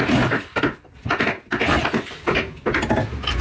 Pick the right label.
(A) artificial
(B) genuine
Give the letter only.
B